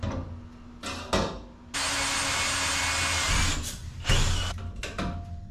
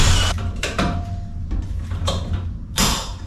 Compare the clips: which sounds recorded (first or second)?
first